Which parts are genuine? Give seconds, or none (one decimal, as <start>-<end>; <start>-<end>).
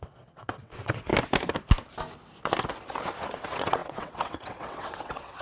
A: 1.1-3.4